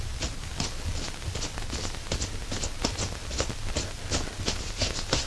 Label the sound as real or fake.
real